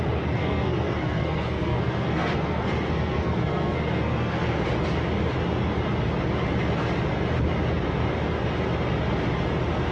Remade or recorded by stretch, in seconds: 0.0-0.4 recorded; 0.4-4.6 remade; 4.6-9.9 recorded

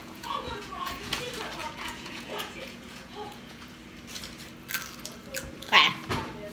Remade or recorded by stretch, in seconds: 0.0-1.2 remade; 1.2-1.6 recorded; 1.6-3.7 remade; 3.7-6.5 recorded

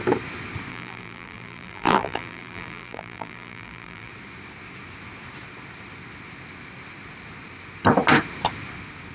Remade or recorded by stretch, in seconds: 0.0-0.7 recorded; 0.7-4.1 remade; 4.1-9.1 recorded

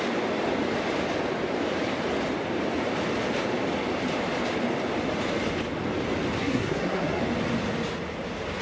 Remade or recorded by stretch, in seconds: 0.0-6.4 recorded; 6.4-7.2 remade; 7.2-8.6 recorded

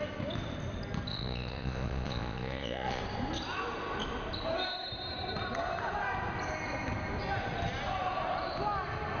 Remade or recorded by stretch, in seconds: 0.0-1.1 recorded; 1.1-3.0 remade; 3.0-9.2 recorded

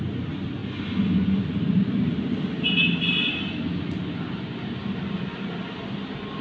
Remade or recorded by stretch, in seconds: 0.0-6.4 recorded

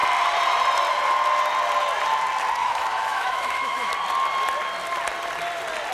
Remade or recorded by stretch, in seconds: 0.0-2.6 recorded; 2.6-3.9 remade; 3.9-5.9 recorded